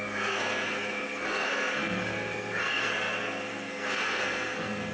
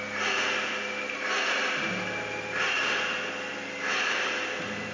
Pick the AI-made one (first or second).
first